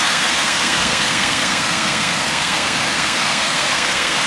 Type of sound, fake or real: fake